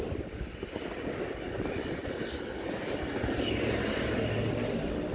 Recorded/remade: recorded